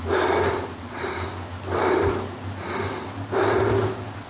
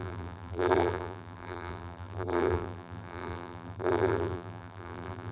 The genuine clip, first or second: first